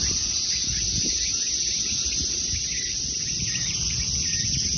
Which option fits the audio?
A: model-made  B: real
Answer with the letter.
B